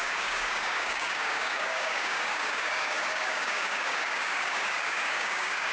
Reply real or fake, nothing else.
fake